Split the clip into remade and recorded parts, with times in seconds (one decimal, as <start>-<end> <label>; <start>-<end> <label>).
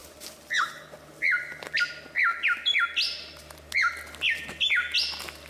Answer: 0.0-5.5 recorded